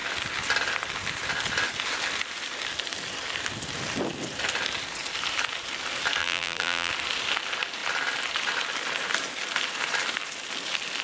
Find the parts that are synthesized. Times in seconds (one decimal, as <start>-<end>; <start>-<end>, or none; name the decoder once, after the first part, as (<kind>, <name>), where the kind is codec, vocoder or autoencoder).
6.2-6.9 (vocoder, BigVGAN v2)